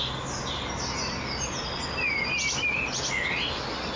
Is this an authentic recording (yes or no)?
yes